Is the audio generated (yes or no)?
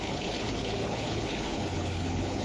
yes